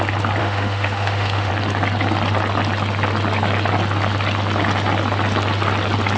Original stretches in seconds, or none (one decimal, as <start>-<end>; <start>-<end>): 0.0-0.4; 1.5-6.2